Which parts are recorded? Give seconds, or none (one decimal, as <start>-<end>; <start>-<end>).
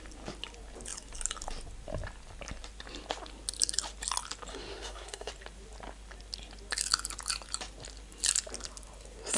0.0-4.5; 5.3-9.4